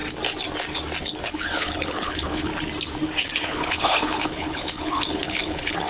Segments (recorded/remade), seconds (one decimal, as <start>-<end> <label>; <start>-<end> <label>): 0.0-1.0 recorded; 1.0-2.5 remade; 2.5-3.2 recorded; 3.2-5.9 remade